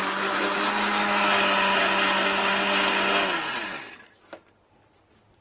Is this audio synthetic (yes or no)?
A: no